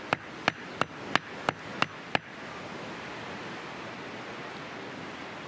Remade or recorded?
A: recorded